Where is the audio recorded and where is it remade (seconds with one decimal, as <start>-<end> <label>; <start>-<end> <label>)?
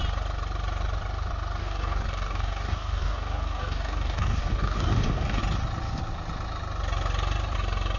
0.0-1.6 recorded; 1.6-5.4 remade; 5.4-8.0 recorded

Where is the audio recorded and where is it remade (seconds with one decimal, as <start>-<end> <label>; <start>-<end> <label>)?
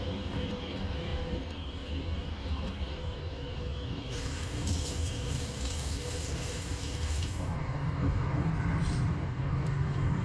0.0-8.5 remade; 8.5-9.1 recorded; 9.1-10.2 remade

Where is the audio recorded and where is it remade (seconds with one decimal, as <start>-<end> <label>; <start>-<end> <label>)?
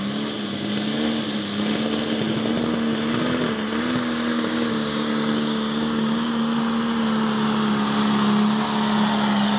0.0-4.3 recorded; 4.3-6.3 remade; 6.3-9.6 recorded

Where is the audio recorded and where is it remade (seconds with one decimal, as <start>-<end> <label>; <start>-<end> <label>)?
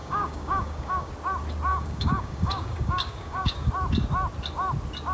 0.0-1.1 remade; 1.1-1.7 recorded; 1.7-3.7 remade; 3.7-5.1 recorded